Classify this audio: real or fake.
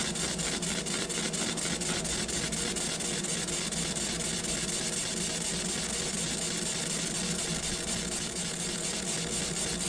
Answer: real